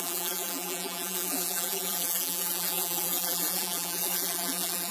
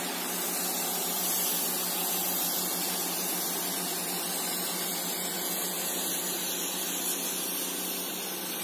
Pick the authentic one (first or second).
second